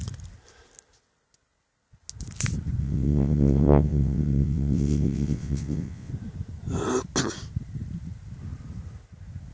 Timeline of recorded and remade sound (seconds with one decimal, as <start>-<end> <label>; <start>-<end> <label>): 0.0-2.8 recorded; 2.8-6.1 remade; 6.1-9.5 recorded